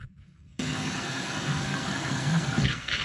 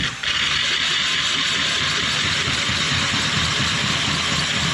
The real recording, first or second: second